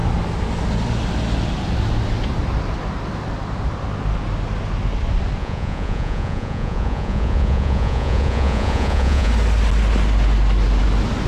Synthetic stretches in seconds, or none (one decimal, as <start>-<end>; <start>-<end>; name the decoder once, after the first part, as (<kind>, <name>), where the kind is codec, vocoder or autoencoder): 5.4-9.3 (vocoder, Vocos)